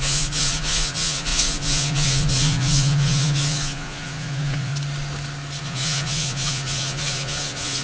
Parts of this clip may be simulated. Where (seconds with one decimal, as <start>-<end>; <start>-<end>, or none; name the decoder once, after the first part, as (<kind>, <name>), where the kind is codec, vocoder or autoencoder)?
0.0-4.7 (vocoder, Vocos); 5.6-7.8